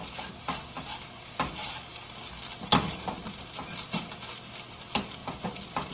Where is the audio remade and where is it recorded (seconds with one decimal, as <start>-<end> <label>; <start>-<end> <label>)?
0.0-5.9 recorded

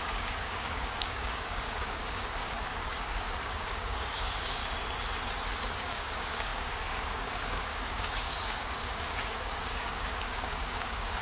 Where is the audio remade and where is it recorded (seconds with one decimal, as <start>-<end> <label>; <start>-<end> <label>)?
0.0-4.6 remade; 4.6-5.8 recorded; 5.8-11.2 remade

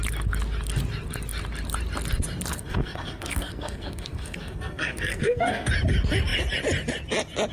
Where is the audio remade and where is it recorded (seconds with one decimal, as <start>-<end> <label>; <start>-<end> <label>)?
0.0-2.5 recorded; 2.5-5.7 remade; 5.7-7.5 recorded

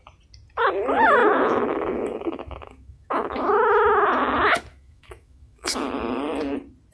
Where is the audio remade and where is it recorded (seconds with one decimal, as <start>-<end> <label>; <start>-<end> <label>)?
0.0-1.2 recorded; 1.2-4.1 remade; 4.1-4.7 recorded; 4.7-5.8 remade; 5.8-6.9 recorded

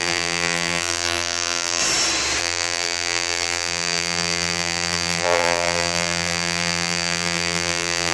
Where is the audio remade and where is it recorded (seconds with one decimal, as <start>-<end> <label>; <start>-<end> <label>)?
0.0-1.8 remade; 1.8-2.4 recorded; 2.4-8.1 remade

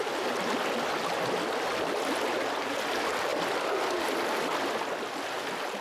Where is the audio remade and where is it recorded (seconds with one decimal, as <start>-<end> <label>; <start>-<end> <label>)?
0.0-5.8 recorded

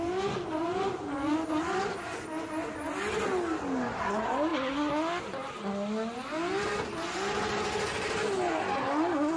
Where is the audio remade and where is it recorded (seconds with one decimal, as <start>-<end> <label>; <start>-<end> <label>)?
0.0-9.4 recorded

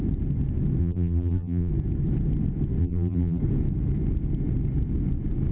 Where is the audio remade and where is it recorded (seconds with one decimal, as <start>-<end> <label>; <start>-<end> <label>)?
0.0-0.8 recorded; 0.8-1.7 remade; 1.7-2.8 recorded; 2.8-3.4 remade; 3.4-5.5 recorded